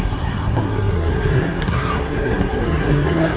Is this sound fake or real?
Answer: fake